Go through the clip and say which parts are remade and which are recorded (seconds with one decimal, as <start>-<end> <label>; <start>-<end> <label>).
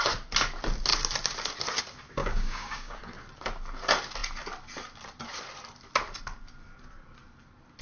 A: 0.0-2.2 recorded; 2.2-3.0 remade; 3.0-7.8 recorded